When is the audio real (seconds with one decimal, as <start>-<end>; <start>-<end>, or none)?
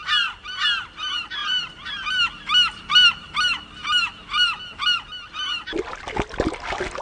0.0-7.0